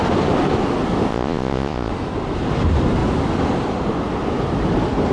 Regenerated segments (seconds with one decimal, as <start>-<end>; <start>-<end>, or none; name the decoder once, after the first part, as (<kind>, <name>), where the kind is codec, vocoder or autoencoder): 1.1-1.9 (vocoder, Vocos)